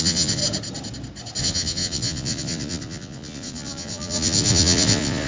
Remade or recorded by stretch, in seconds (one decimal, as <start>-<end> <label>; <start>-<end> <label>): 0.0-0.4 remade; 0.4-1.4 recorded; 1.4-5.3 remade